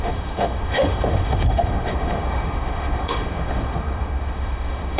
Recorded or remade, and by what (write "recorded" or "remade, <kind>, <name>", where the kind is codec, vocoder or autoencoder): remade, autoencoder, DAC-VAE